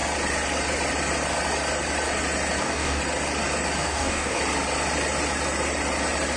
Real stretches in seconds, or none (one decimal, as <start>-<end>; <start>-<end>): 0.0-2.6; 3.0-3.8; 4.4-6.4